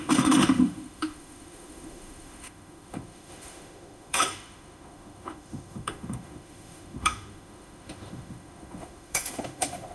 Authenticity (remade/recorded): remade